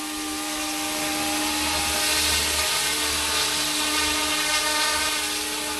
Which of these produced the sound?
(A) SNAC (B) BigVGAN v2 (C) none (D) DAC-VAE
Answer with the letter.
C